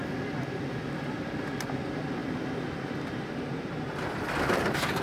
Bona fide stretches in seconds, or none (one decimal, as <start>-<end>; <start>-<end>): 0.0-5.0